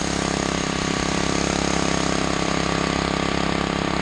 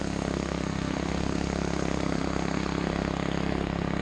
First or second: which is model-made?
second